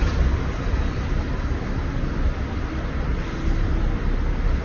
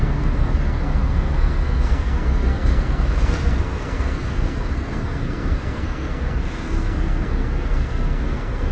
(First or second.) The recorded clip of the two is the first